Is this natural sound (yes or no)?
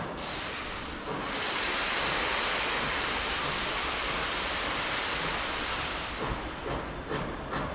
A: yes